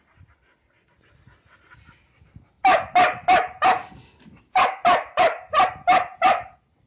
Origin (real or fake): real